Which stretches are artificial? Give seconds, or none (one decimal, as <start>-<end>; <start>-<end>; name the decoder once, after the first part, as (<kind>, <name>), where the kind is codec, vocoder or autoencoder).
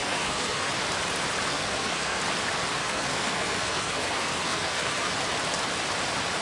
0.0-0.7 (codec, SNAC); 1.5-2.2; 2.8-5.1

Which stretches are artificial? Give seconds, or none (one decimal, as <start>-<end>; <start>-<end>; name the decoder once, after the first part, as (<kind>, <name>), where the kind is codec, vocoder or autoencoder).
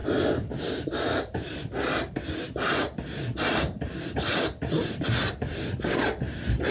0.0-1.4 (vocoder, BigVGAN v2); 5.3-6.7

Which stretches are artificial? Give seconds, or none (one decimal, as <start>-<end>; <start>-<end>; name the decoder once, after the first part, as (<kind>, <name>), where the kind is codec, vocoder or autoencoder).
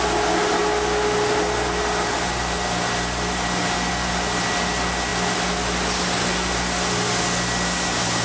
none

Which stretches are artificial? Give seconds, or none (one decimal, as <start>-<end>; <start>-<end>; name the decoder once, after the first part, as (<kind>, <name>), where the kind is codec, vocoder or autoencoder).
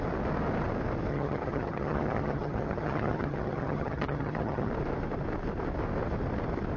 1.1-4.7 (vocoder, HiFi-GAN)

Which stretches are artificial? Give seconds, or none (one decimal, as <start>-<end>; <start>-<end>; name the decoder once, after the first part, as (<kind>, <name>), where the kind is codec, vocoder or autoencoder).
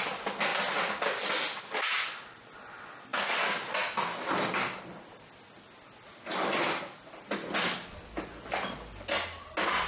none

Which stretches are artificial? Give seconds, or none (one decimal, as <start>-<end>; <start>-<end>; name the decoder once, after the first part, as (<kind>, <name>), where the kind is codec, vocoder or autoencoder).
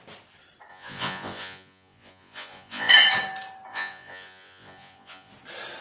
0.7-2.9 (vocoder, Vocos); 3.7-5.3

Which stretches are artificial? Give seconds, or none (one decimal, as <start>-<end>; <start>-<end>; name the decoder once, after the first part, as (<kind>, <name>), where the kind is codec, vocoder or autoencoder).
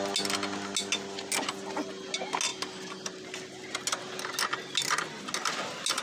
none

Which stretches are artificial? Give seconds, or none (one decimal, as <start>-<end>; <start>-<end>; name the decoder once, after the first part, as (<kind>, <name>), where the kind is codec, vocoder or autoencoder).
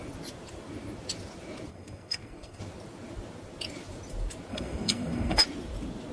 1.7-2.6 (codec, SNAC); 4.5-5.4